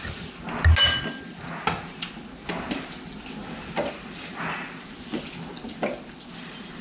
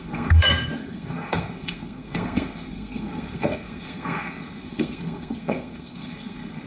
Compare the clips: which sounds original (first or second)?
first